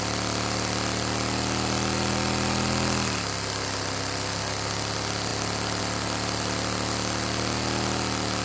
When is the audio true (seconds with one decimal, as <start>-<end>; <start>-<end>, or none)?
0.0-8.4